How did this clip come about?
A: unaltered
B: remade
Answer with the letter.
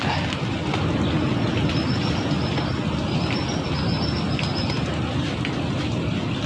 A